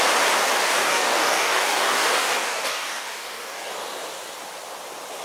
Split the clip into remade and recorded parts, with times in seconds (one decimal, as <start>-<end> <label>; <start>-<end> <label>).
0.0-0.6 recorded; 0.6-3.7 remade; 3.7-5.2 recorded